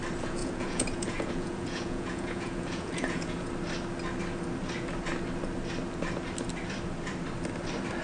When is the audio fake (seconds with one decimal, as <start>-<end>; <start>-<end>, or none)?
0.4-3.5